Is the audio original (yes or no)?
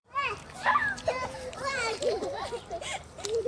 no